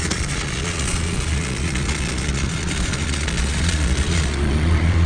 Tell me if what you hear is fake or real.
fake